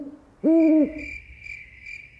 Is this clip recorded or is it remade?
recorded